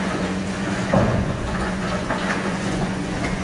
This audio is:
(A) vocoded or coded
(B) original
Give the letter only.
A